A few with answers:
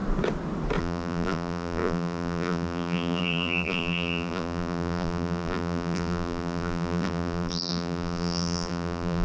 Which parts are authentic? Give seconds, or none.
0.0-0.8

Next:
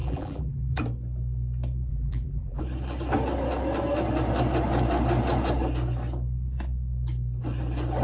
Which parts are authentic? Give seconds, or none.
0.8-1.9; 2.6-8.0

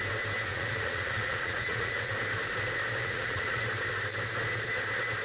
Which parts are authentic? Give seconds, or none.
0.0-0.5; 2.1-3.0; 3.6-5.2